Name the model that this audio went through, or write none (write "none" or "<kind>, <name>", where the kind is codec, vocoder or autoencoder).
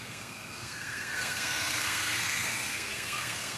codec, SNAC